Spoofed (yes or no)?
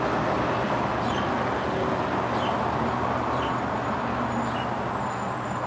no